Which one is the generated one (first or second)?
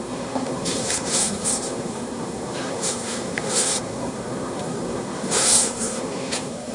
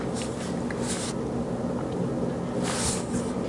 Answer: first